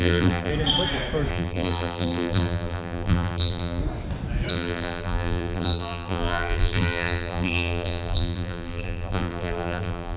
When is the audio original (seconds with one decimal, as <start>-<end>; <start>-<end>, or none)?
0.5-1.3; 3.8-4.5